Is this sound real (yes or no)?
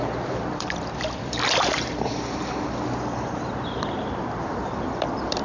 no